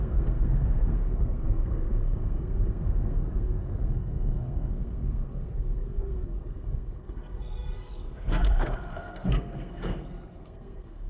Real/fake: fake